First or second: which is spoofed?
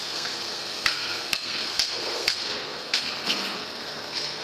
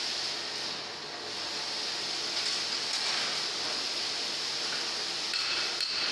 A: first